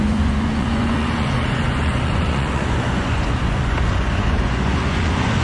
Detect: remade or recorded remade